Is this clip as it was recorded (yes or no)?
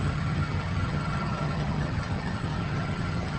no